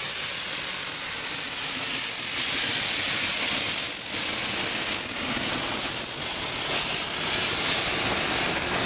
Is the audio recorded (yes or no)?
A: yes